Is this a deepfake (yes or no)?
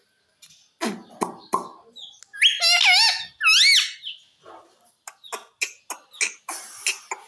no